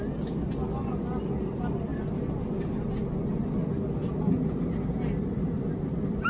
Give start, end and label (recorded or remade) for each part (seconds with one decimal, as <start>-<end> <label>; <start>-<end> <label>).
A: 0.0-6.3 recorded